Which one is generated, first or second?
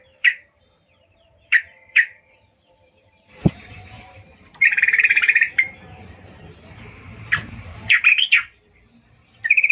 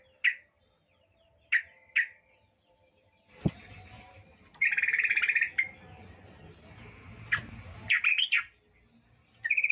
first